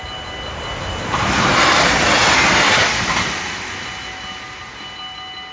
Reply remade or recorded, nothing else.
recorded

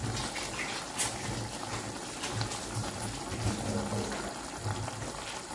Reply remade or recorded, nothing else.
recorded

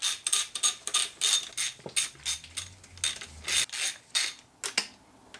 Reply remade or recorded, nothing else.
recorded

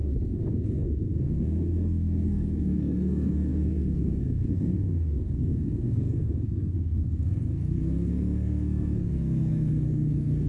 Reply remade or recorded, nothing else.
remade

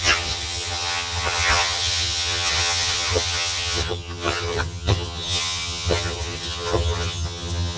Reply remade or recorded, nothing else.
remade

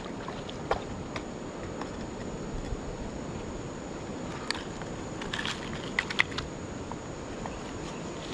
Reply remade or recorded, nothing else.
recorded